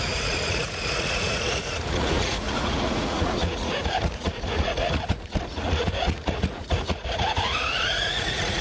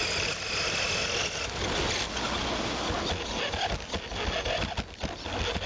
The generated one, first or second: first